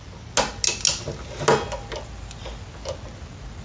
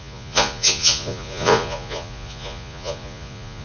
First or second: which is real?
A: first